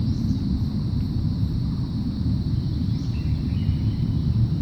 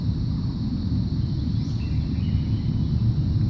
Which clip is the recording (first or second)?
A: second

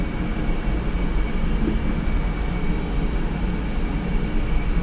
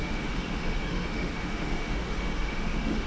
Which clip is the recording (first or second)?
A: first